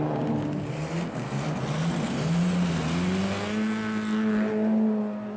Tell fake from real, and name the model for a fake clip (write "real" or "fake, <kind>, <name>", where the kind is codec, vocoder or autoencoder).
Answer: real